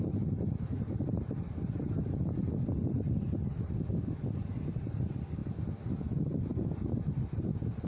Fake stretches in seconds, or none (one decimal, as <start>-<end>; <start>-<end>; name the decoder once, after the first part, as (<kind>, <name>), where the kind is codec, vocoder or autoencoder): none